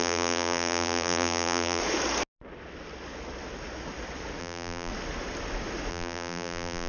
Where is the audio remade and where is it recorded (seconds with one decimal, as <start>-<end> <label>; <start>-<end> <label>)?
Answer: 0.0-1.8 remade; 1.8-4.4 recorded; 4.4-4.9 remade; 4.9-5.9 recorded; 5.9-6.9 remade